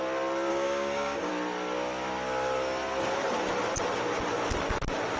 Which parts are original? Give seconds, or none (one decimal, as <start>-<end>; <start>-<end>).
0.0-0.5; 1.3-5.2